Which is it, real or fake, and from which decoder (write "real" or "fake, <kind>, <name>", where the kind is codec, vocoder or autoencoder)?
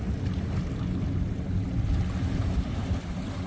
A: real